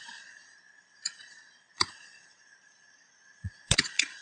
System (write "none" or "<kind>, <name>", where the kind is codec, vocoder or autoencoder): vocoder, Vocos